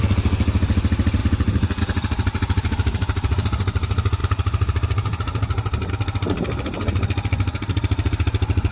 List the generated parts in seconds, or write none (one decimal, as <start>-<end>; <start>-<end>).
none